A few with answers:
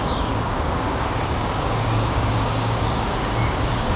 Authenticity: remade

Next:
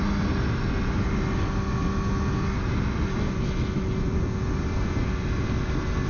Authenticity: recorded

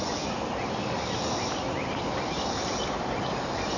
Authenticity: remade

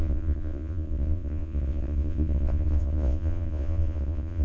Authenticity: remade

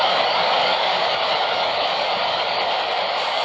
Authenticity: remade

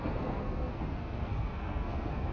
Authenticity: remade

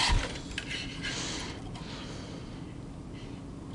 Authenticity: recorded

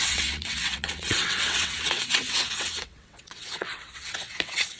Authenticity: remade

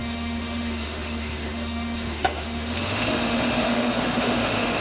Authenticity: remade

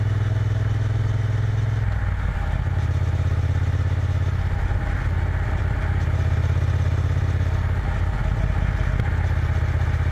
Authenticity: recorded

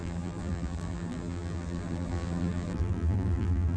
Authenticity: remade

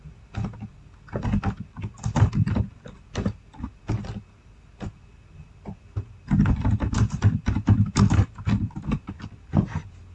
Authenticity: recorded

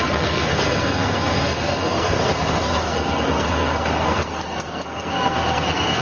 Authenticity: remade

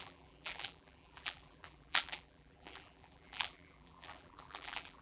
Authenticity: remade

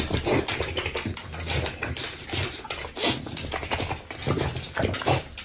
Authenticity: recorded